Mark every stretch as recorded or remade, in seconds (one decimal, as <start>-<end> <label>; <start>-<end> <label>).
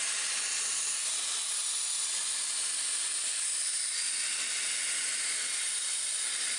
0.0-6.6 recorded